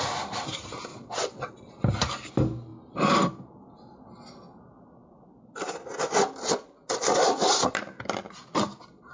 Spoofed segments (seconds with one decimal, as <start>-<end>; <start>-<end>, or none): 0.9-1.5